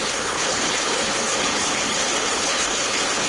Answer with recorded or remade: remade